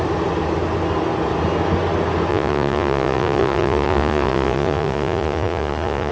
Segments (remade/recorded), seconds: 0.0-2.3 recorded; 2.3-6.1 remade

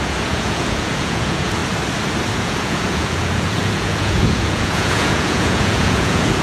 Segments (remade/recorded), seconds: 0.0-1.6 remade; 1.6-2.4 recorded; 2.4-6.4 remade

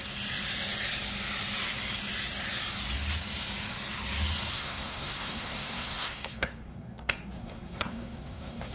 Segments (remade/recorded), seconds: 0.0-4.5 recorded; 4.5-8.7 remade

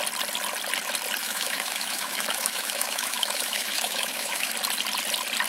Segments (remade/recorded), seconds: 0.0-1.2 recorded; 1.2-4.5 remade; 4.5-5.5 recorded

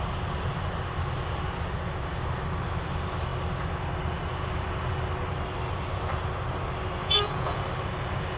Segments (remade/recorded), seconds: 0.0-7.0 recorded; 7.0-7.6 remade; 7.6-8.4 recorded